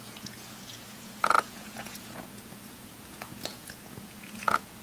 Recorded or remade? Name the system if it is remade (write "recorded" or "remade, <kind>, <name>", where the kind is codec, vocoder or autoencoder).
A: remade, vocoder, Vocos